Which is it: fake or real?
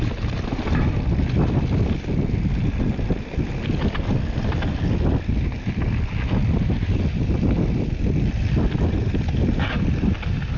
real